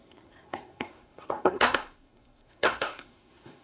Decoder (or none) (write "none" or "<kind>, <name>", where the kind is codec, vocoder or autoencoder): codec, SNAC